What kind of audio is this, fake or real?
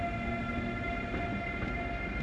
real